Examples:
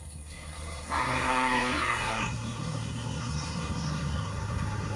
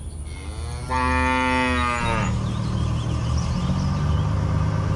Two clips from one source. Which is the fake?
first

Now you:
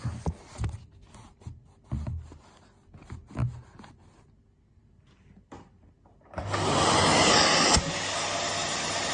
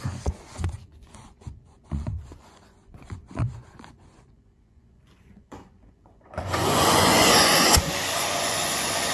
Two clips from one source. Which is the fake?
second